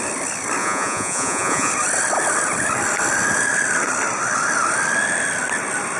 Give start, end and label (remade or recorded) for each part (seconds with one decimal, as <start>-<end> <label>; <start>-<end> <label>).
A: 0.0-0.6 recorded; 0.6-1.7 remade; 1.7-6.0 recorded